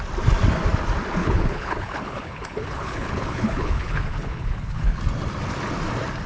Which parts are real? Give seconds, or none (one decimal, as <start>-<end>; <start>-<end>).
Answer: 0.0-1.2; 5.0-6.3